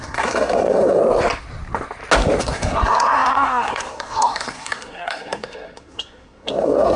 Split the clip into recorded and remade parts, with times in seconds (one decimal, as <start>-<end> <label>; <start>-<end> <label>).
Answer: 0.0-1.0 remade; 1.0-2.4 recorded; 2.4-7.0 remade